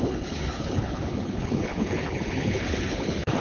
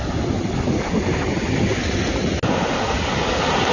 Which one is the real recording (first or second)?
second